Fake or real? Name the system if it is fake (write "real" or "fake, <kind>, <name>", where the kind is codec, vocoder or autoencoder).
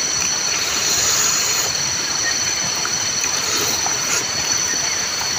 fake, vocoder, BigVGAN v2